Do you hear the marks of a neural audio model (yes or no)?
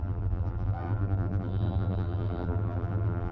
yes